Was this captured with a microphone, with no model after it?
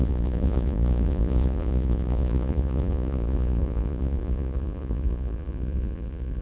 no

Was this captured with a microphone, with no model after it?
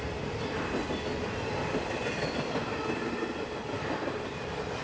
yes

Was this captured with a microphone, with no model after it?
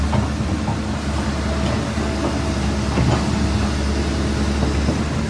yes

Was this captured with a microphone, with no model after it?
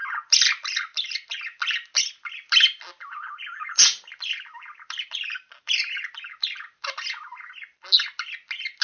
yes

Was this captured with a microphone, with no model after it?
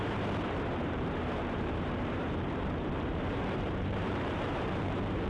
no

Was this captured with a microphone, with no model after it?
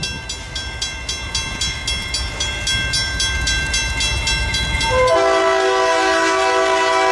yes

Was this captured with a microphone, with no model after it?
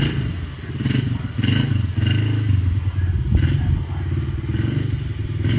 yes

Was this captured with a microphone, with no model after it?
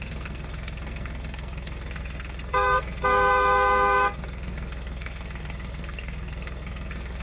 no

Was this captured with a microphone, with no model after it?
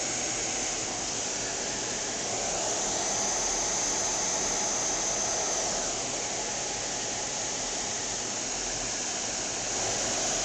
yes